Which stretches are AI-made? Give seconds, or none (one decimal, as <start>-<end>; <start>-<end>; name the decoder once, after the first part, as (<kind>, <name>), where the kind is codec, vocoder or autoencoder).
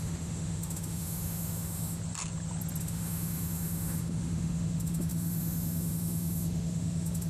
0.0-2.0 (autoencoder, DAC-VAE); 2.8-7.3